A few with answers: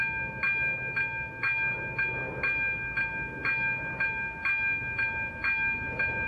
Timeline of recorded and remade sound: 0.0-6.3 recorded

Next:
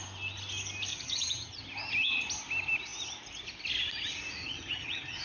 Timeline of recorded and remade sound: 0.0-0.9 recorded; 0.9-1.6 remade; 1.6-4.4 recorded; 4.4-5.2 remade

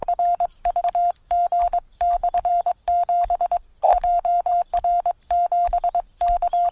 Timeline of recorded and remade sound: 0.0-2.2 recorded; 2.2-2.8 remade; 2.8-3.9 recorded; 3.9-4.7 remade; 4.7-6.7 recorded

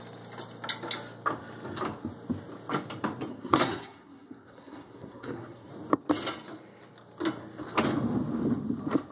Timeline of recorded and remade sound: 0.0-3.3 recorded; 3.3-5.7 remade; 5.7-9.1 recorded

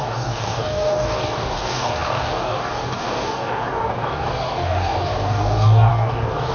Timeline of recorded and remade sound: 0.0-6.5 remade

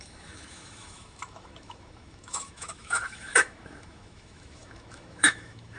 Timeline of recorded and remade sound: 0.0-5.8 remade

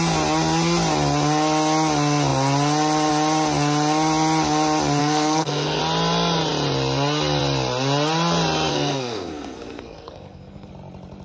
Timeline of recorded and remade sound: 0.0-5.0 recorded; 5.0-5.8 remade; 5.8-8.7 recorded; 8.7-10.7 remade; 10.7-11.2 recorded